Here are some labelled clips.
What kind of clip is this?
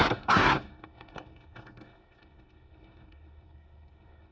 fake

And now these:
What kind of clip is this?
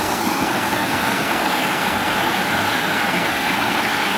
fake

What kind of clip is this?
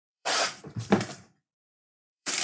fake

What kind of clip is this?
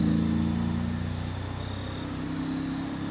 real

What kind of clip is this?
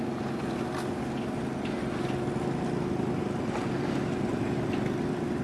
real